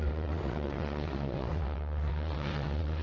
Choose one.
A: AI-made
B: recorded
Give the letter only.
A